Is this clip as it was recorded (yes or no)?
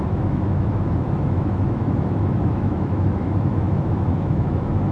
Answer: no